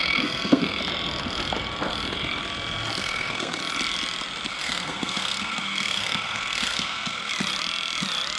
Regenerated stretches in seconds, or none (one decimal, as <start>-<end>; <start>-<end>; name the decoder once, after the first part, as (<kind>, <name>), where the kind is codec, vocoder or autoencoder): 0.0-0.8 (codec, SNAC); 3.0-3.6; 4.5-7.3